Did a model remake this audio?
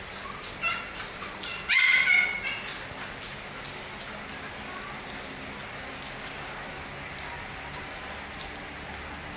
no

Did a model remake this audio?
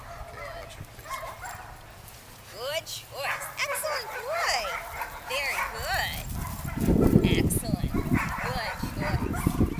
no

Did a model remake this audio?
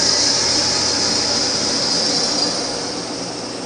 no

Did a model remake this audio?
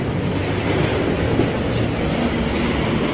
no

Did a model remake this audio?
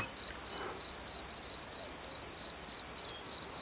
no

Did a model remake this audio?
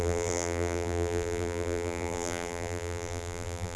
yes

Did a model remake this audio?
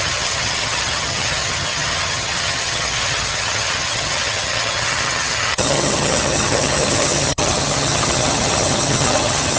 yes